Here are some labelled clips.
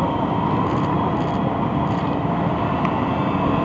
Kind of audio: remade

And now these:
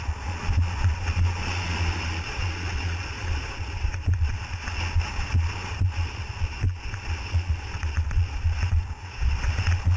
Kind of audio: remade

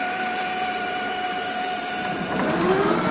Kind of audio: recorded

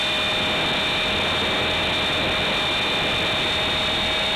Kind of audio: recorded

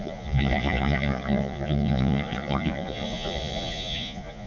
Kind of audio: remade